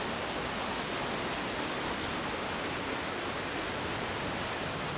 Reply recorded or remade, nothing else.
recorded